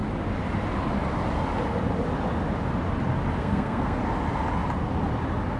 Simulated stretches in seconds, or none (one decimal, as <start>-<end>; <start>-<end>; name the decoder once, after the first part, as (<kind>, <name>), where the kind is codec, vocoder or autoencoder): 3.4-4.0 (codec, SNAC)